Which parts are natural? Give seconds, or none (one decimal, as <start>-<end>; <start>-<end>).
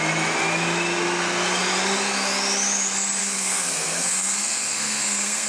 0.0-3.2